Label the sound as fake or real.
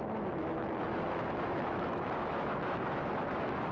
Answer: fake